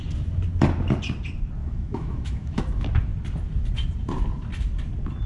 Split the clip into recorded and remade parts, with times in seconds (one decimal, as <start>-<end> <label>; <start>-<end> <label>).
0.0-1.6 recorded; 1.6-2.6 remade; 2.6-5.3 recorded